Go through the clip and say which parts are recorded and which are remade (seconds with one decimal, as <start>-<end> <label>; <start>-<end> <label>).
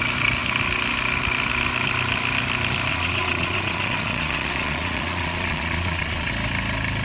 0.0-2.9 recorded; 2.9-6.3 remade; 6.3-7.0 recorded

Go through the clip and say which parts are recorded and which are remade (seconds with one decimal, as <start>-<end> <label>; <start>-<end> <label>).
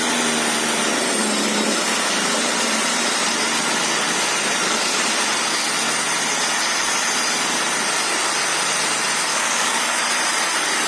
0.0-9.3 recorded; 9.3-9.8 remade; 9.8-10.9 recorded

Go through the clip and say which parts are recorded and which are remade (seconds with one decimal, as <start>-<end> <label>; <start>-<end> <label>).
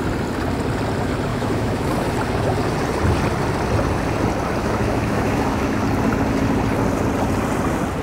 0.0-1.3 recorded; 1.3-1.9 remade; 1.9-4.6 recorded; 4.6-5.8 remade; 5.8-8.0 recorded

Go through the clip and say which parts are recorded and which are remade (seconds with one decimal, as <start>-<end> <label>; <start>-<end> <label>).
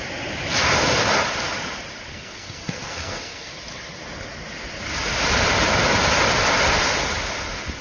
0.0-2.1 recorded; 2.1-3.5 remade; 3.5-7.8 recorded